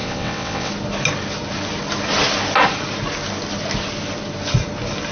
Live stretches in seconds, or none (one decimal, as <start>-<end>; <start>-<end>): 0.7-5.1